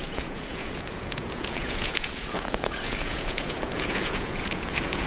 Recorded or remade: remade